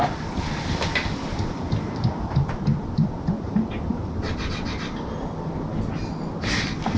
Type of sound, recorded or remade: recorded